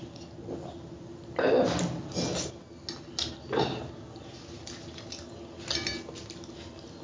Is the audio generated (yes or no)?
no